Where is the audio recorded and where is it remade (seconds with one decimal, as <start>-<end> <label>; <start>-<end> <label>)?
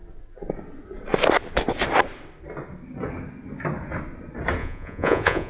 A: 0.0-4.6 recorded; 4.6-5.5 remade